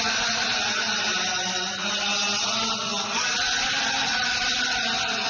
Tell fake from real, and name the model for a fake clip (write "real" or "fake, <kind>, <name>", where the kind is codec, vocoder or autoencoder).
real